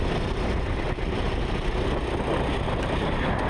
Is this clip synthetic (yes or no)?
no